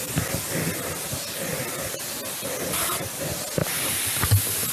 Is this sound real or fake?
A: real